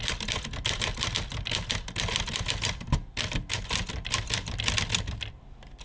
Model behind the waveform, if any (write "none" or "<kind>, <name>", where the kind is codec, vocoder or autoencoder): none